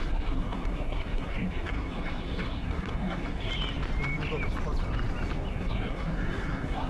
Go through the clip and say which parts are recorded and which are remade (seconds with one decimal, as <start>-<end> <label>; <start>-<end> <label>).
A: 0.0-3.5 remade; 3.5-5.5 recorded; 5.5-6.9 remade